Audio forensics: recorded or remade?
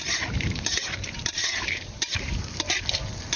remade